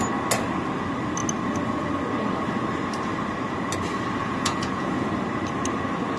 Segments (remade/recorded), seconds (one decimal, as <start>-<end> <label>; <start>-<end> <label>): 0.0-4.2 recorded; 4.2-5.1 remade; 5.1-6.2 recorded